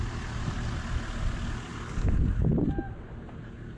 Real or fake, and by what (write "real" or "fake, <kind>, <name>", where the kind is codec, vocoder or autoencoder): real